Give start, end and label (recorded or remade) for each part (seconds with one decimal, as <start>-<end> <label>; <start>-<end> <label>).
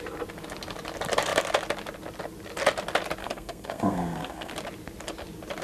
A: 0.0-3.2 recorded; 3.2-4.5 remade; 4.5-5.6 recorded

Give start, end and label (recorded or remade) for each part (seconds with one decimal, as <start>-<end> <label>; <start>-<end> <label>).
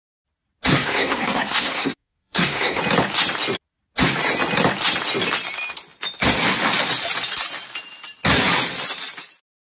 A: 0.0-0.7 recorded; 0.7-2.8 remade; 2.8-9.7 recorded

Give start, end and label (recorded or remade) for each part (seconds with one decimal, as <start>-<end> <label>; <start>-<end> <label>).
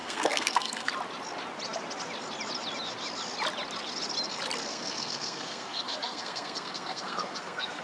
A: 0.0-0.9 remade; 0.9-4.7 recorded; 4.7-7.8 remade